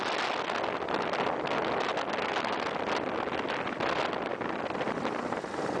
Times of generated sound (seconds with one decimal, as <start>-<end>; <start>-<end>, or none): none